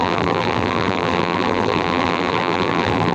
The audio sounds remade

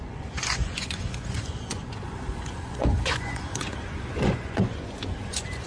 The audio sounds remade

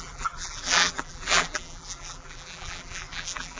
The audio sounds remade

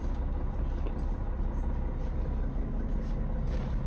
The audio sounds recorded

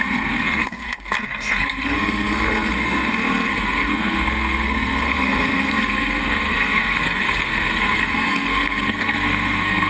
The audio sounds remade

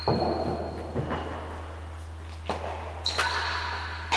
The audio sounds recorded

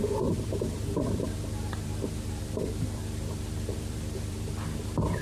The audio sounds remade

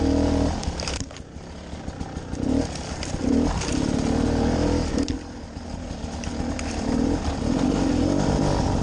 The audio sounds recorded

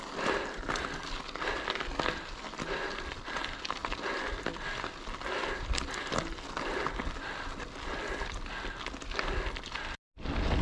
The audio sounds recorded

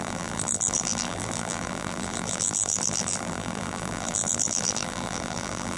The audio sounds remade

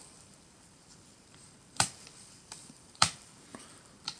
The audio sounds remade